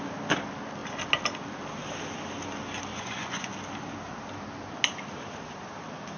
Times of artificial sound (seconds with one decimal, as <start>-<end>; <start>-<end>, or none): 2.9-3.5